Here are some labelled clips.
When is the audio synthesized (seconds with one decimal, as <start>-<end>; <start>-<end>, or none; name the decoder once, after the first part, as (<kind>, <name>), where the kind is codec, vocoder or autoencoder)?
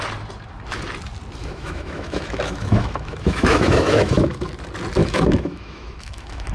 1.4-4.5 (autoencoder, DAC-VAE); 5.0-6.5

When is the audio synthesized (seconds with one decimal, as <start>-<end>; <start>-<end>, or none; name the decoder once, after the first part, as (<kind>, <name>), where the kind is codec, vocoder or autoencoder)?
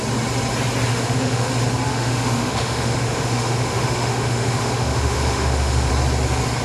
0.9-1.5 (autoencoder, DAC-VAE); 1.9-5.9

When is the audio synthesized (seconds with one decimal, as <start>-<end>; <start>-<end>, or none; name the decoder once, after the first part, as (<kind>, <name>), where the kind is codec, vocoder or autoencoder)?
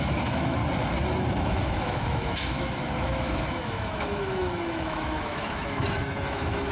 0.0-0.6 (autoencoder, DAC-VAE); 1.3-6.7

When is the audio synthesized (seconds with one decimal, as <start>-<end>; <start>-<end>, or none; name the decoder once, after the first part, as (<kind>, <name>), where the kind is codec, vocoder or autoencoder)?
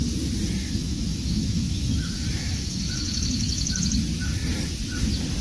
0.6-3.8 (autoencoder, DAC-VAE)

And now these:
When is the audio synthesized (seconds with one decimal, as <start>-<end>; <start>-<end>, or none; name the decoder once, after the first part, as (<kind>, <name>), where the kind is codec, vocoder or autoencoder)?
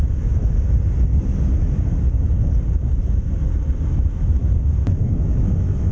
0.0-0.4 (autoencoder, DAC-VAE); 3.9-4.4; 5.0-5.9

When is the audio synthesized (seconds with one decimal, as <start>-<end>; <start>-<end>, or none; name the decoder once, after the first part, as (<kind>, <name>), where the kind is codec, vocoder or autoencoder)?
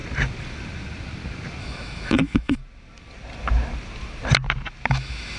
1.6-2.6 (autoencoder, DAC-VAE); 4.9-5.4